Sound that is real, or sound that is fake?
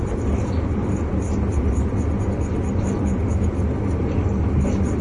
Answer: real